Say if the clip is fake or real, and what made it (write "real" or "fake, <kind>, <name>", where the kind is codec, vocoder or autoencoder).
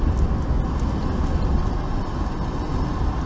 real